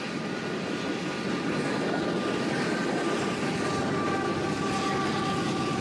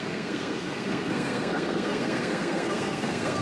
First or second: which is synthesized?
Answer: second